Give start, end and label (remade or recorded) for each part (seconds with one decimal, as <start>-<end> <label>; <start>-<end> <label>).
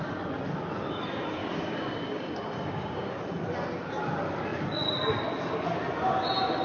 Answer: 0.0-1.4 recorded; 1.4-3.2 remade; 3.2-6.6 recorded